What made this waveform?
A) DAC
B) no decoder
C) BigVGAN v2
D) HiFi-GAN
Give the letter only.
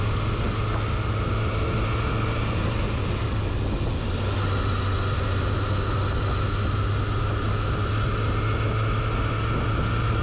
B